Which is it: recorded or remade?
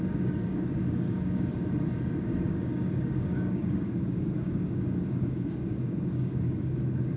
remade